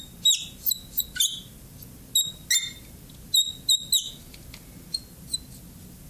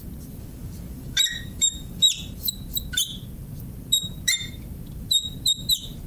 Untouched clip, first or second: first